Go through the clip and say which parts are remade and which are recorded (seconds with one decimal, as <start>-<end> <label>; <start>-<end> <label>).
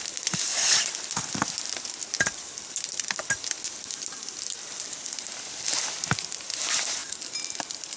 0.0-8.0 recorded